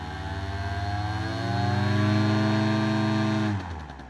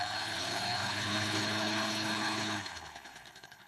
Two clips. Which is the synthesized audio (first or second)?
second